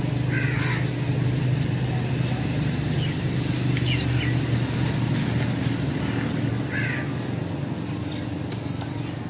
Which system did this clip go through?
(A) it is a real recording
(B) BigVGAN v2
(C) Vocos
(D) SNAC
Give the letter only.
A